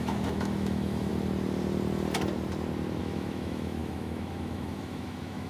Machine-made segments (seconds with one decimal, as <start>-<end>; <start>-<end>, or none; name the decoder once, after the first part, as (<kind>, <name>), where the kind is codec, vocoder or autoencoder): 0.0-1.1 (autoencoder, DAC-VAE); 3.0-5.5

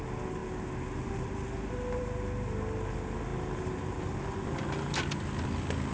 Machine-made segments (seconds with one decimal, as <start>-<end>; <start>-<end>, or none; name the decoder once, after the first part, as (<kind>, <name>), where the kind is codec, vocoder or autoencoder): none

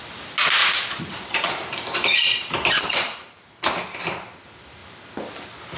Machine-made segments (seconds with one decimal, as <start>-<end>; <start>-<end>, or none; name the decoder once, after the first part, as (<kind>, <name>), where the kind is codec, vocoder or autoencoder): 0.6-3.8 (vocoder, BigVGAN v2)

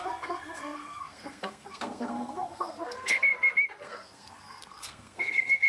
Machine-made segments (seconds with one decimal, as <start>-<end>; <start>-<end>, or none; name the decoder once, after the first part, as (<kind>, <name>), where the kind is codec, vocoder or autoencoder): 0.0-3.3 (codec, SNAC); 3.8-5.7

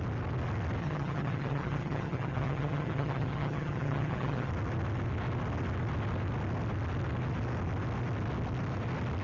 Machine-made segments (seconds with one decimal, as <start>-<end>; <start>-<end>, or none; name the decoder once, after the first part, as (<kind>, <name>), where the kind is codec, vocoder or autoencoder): 0.8-4.5 (vocoder, HiFi-GAN)

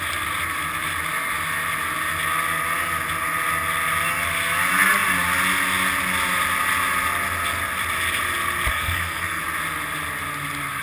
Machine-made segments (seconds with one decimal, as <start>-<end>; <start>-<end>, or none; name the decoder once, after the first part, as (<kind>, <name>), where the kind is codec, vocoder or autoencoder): 8.7-9.4 (codec, SNAC)

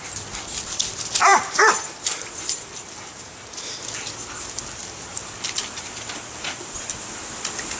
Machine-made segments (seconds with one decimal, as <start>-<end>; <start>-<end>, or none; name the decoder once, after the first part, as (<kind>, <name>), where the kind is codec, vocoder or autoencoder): 1.3-3.8 (vocoder, BigVGAN v2)

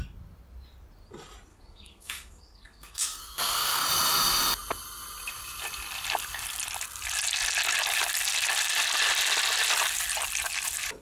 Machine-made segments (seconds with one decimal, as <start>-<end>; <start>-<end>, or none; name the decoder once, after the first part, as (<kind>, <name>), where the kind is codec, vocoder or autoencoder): 1.5-3.8 (codec, SNAC)